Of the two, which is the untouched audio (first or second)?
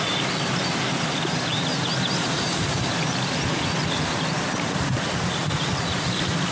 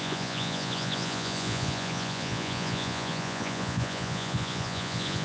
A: first